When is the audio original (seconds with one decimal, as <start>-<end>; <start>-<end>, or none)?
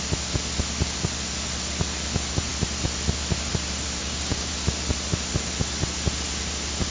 0.0-4.0; 4.5-6.9